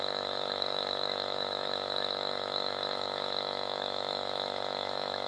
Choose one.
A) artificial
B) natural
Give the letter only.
A